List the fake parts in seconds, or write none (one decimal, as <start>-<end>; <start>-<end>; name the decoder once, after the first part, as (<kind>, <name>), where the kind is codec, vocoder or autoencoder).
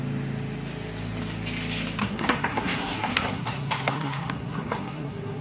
2.0-5.4 (codec, SNAC)